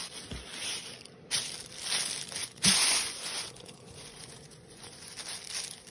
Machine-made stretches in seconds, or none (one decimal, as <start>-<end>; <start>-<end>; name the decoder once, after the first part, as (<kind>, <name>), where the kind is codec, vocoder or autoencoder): 2.4-5.1 (vocoder, Vocos)